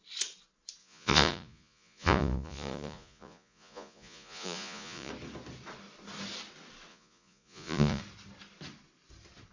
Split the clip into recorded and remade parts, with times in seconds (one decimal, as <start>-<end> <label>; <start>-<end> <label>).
0.0-0.8 recorded; 0.8-5.1 remade; 5.1-6.9 recorded; 6.9-8.0 remade; 8.0-9.5 recorded